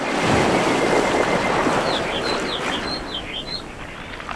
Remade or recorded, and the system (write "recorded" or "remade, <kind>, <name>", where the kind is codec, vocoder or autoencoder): recorded